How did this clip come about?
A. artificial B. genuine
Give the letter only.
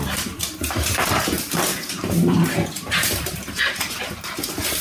A